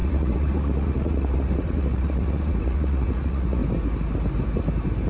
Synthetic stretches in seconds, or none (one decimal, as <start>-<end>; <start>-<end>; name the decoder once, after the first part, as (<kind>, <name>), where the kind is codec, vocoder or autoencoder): 0.0-3.6 (vocoder, Vocos)